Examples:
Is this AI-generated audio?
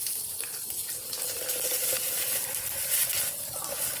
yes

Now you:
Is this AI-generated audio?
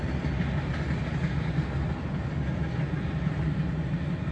no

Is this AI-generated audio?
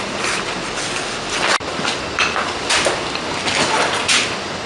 no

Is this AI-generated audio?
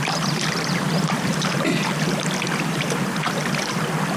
yes